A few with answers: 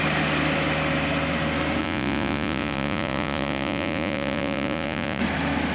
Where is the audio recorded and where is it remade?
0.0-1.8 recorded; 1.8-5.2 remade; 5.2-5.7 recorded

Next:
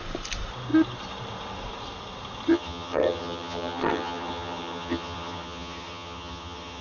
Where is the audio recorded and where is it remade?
0.0-2.5 recorded; 2.5-6.8 remade

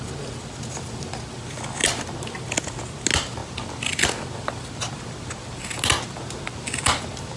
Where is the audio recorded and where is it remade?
0.0-7.4 recorded

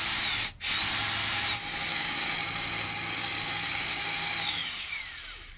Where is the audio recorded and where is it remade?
0.0-1.9 recorded; 1.9-5.0 remade; 5.0-5.6 recorded

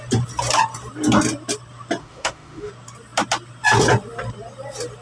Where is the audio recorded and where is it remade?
0.0-2.0 recorded; 2.0-2.7 remade; 2.7-5.0 recorded

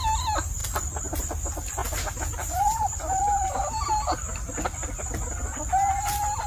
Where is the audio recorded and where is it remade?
0.0-6.5 recorded

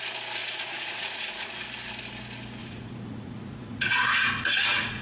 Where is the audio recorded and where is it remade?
0.0-0.4 recorded; 0.4-1.5 remade; 1.5-2.6 recorded; 2.6-5.0 remade

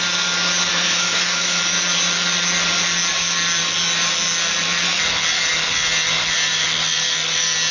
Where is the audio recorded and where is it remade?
0.0-0.7 recorded; 0.7-1.6 remade; 1.6-7.7 recorded